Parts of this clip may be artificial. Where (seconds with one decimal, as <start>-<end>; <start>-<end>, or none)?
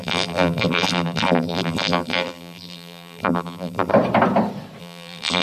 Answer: 0.0-3.9; 4.8-5.4